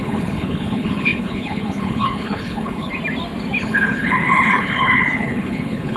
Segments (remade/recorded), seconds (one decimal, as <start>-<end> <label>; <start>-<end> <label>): 0.0-2.9 remade; 2.9-3.6 recorded; 3.6-6.0 remade